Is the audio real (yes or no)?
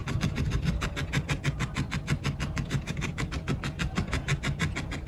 yes